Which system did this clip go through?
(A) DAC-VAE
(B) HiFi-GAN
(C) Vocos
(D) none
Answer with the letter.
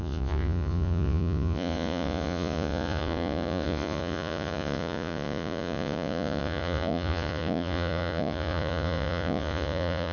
C